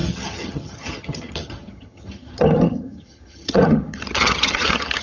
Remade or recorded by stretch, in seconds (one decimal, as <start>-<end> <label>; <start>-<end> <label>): 0.0-5.0 remade